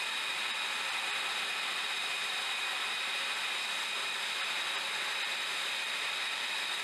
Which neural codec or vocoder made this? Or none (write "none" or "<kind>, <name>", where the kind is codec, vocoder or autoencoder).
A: none